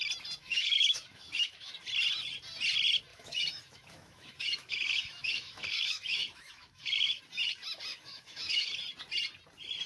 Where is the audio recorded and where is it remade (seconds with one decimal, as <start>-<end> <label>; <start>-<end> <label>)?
0.0-0.4 recorded; 0.4-1.7 remade; 1.7-3.1 recorded; 3.1-7.2 remade; 7.2-7.9 recorded; 7.9-8.7 remade; 8.7-9.9 recorded